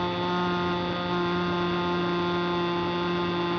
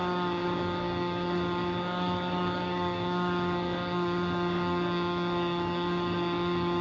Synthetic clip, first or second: second